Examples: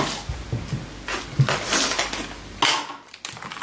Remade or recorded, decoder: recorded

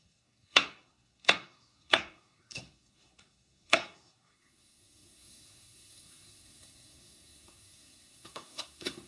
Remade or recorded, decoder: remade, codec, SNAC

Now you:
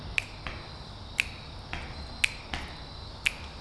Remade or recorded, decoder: recorded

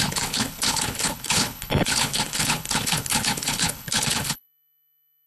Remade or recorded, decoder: remade, codec, HILCodec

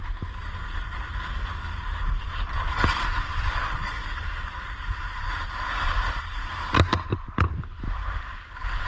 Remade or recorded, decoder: recorded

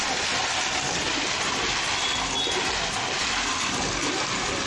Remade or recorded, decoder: recorded